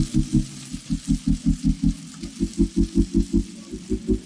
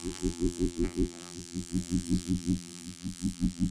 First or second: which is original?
first